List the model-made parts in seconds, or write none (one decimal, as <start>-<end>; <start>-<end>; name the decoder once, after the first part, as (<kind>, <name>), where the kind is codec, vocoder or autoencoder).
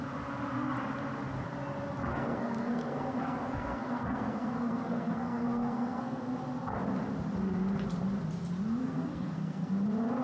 2.0-6.2 (codec, SNAC); 8.8-9.7